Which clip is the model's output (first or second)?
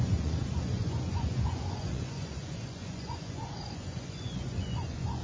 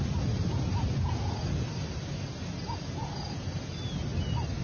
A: first